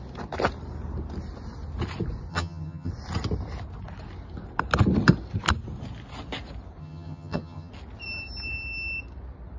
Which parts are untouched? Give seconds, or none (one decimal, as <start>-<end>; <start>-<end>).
0.0-2.3; 2.9-6.8; 7.7-9.6